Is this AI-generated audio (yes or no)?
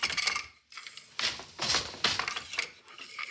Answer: no